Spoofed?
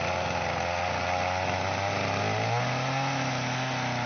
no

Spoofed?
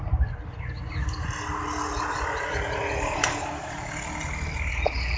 no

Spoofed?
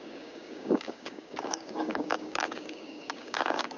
yes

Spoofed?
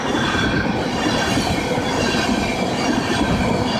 no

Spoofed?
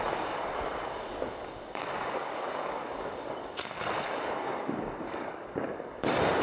yes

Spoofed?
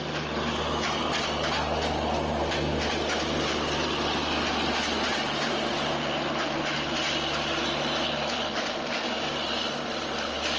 no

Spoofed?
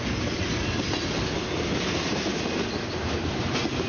no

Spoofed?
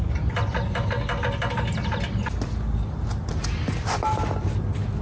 no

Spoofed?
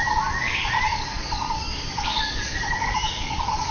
yes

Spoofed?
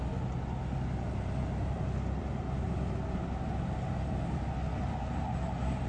no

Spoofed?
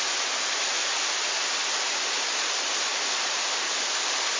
no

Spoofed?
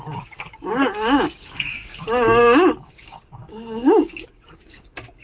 yes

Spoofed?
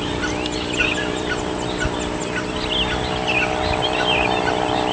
no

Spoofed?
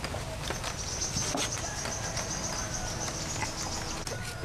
no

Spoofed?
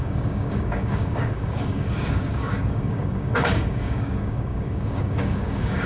yes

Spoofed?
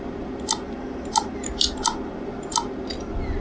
no